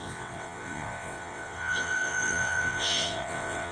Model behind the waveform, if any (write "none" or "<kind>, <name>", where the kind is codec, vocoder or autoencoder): vocoder, WaveNeXt